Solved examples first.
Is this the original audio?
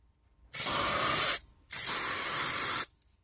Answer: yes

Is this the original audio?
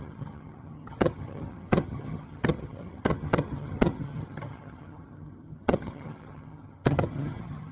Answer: no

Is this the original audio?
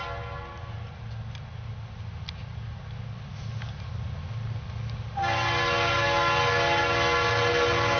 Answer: yes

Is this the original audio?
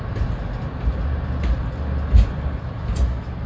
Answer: yes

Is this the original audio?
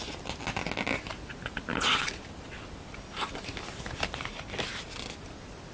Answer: yes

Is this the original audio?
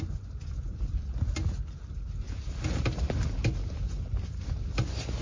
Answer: yes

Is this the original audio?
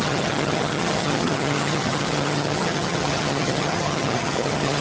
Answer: no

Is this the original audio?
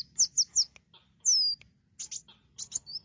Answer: yes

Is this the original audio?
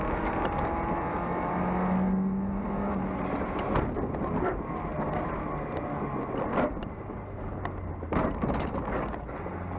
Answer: yes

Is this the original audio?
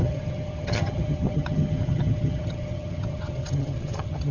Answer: no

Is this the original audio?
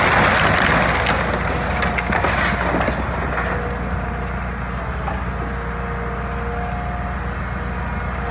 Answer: yes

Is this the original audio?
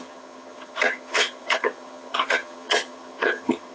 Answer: no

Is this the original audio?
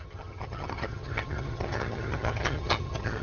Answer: no